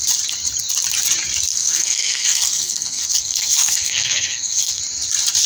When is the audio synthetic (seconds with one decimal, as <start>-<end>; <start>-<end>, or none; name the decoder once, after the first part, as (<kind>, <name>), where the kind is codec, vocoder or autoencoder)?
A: 1.5-4.8 (codec, SNAC)